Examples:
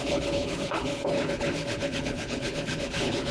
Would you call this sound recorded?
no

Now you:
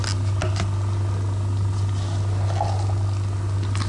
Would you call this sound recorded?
yes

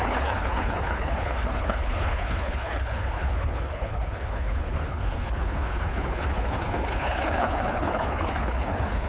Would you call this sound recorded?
no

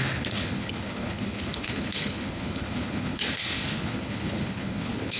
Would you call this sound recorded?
no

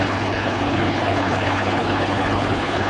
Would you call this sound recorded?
no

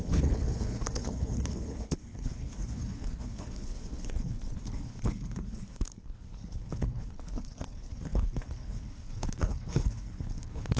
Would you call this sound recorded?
no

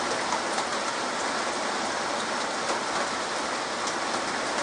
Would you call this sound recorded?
yes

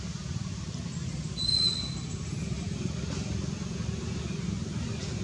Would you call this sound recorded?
yes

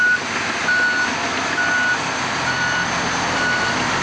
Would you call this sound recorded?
yes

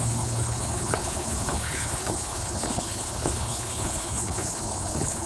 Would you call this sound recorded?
no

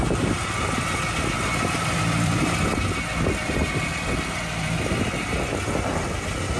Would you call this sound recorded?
yes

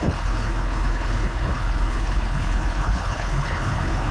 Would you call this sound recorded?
no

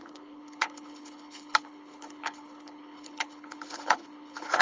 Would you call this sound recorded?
no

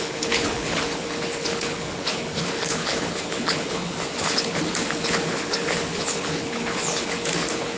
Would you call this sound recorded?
no